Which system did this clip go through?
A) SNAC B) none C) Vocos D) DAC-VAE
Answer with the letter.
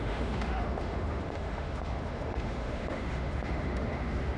D